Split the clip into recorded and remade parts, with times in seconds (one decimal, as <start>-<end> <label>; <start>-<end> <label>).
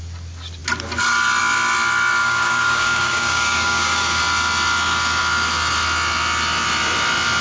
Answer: 0.0-2.2 recorded; 2.2-4.2 remade; 4.2-7.4 recorded